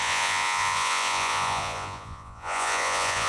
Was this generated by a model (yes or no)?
yes